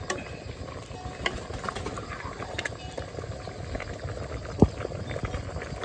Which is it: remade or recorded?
recorded